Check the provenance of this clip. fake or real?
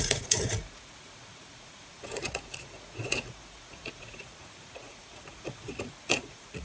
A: fake